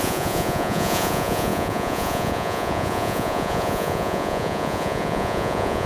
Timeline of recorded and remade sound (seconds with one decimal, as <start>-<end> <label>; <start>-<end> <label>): 0.0-5.9 remade